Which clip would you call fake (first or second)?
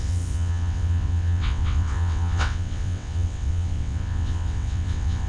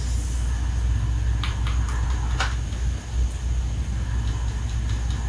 first